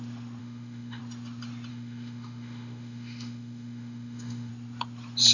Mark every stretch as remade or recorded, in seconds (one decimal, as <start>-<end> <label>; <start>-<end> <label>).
0.0-0.4 recorded; 0.4-1.0 remade; 1.0-1.7 recorded; 1.7-4.5 remade; 4.5-5.3 recorded